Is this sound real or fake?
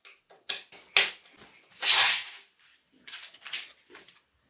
real